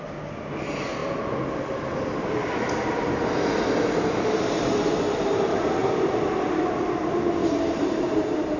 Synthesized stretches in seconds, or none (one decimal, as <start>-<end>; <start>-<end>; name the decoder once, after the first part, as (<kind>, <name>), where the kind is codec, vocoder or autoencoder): none